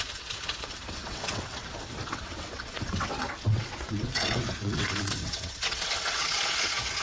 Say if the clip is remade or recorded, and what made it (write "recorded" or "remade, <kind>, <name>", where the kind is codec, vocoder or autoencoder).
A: remade, vocoder, WaveNeXt